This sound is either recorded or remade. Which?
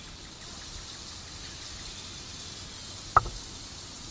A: recorded